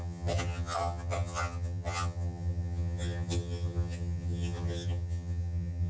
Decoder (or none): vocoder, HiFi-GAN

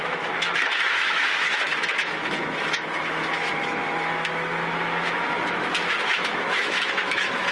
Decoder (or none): autoencoder, DAC-VAE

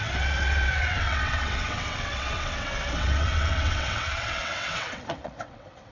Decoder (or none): vocoder, WaveNeXt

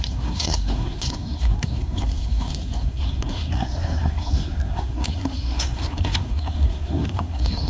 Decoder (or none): codec, SNAC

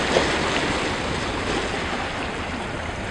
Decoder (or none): none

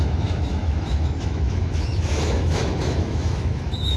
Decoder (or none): autoencoder, DAC-VAE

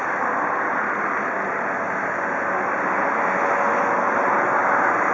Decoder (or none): none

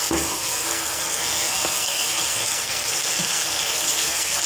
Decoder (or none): codec, SNAC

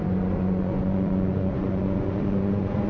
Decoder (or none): vocoder, Vocos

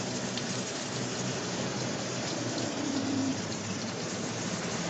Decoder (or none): vocoder, BigVGAN v2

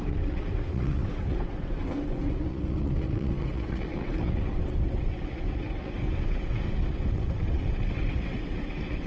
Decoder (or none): vocoder, WaveNeXt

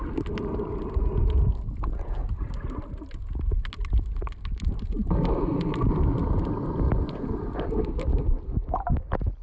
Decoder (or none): none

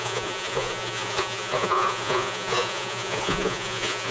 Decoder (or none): vocoder, Vocos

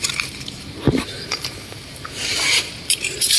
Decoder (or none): vocoder, BigVGAN v2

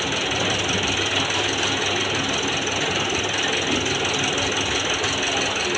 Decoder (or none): none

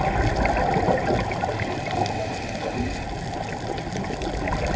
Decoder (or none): none